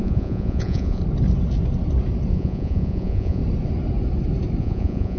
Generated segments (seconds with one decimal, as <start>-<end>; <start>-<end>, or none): 0.0-1.0; 2.3-3.4; 4.6-5.2